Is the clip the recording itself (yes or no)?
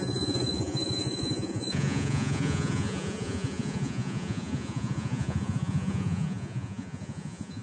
no